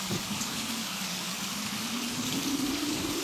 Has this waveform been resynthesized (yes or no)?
yes